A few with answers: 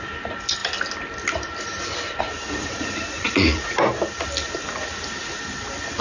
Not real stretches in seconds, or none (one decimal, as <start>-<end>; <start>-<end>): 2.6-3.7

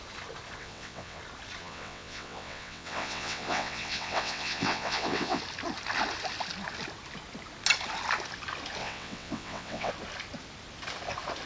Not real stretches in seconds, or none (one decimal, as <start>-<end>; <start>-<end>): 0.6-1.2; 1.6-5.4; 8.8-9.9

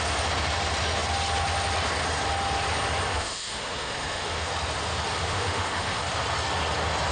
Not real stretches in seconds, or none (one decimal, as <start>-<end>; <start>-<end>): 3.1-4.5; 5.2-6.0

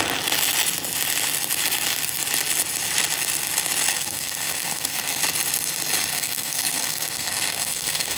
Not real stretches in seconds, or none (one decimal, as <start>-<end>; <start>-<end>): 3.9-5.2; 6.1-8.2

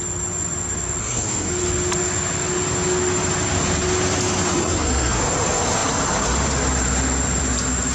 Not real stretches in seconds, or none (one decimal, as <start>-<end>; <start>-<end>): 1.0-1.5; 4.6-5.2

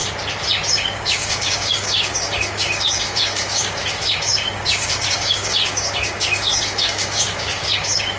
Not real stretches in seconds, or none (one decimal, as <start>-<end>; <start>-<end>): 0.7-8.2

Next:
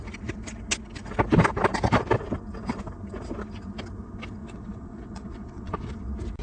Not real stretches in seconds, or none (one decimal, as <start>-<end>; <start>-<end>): 4.4-5.9

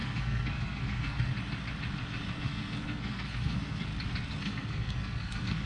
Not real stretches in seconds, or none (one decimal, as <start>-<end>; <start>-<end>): 0.0-1.3; 2.3-3.9; 4.4-5.7